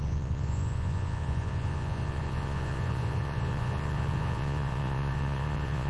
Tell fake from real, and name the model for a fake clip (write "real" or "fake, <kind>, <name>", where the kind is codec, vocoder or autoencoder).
fake, vocoder, Vocos